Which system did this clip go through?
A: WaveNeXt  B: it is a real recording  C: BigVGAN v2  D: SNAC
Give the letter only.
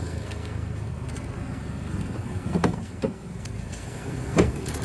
D